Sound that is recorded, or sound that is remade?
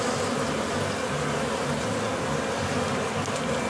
recorded